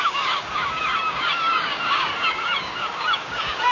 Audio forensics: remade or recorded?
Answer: remade